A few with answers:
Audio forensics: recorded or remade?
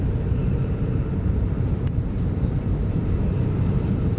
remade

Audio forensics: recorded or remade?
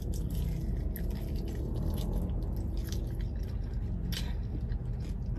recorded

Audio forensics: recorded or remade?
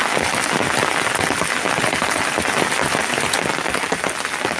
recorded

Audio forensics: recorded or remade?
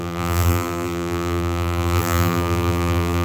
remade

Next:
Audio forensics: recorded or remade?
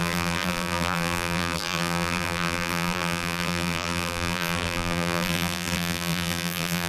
remade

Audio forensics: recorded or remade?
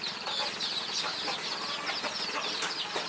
recorded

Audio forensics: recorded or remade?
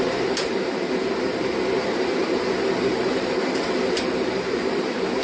remade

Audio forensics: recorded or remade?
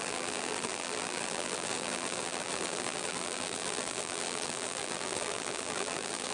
remade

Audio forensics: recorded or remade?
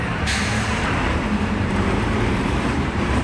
remade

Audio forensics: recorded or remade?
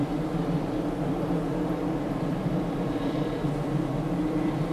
remade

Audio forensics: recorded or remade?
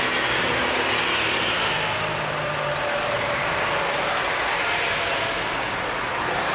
recorded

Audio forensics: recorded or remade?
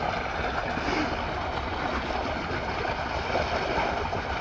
recorded